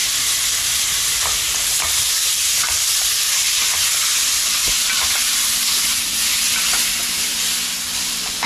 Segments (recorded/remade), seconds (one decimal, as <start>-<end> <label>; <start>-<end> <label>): 0.0-3.7 remade; 3.7-4.6 recorded; 4.6-6.0 remade; 6.0-8.5 recorded